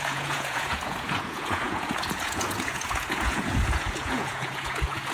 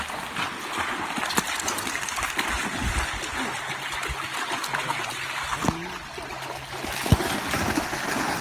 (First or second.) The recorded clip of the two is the second